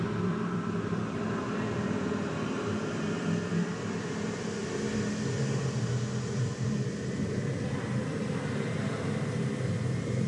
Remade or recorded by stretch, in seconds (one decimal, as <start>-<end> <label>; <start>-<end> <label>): 0.0-4.6 remade; 4.6-6.2 recorded; 6.2-10.3 remade